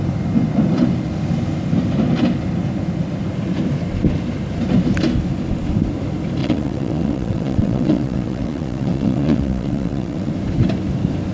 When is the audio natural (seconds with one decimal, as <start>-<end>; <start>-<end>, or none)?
0.0-6.4; 10.3-11.3